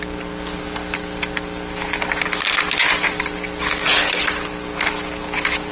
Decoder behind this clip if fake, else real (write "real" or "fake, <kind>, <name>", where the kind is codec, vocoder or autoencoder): real